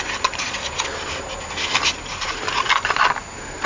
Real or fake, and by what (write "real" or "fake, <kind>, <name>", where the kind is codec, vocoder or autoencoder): real